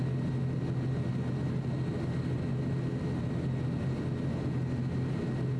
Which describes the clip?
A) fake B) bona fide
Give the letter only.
B